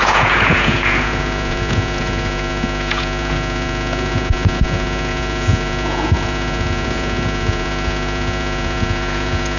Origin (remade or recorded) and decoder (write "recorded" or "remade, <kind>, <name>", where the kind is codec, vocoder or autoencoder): remade, vocoder, Vocos